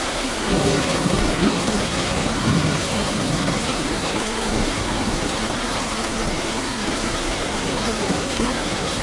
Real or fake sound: fake